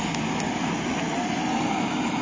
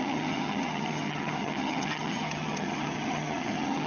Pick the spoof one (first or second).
second